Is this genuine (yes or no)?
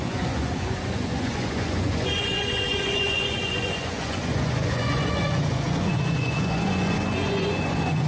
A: no